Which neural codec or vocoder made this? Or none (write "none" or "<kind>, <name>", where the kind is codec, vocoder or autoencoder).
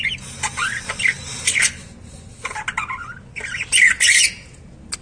none